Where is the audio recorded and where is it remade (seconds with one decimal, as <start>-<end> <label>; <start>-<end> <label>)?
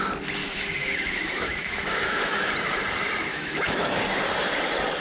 0.0-0.4 recorded; 0.4-2.5 remade; 2.5-3.3 recorded; 3.3-4.0 remade; 4.0-5.0 recorded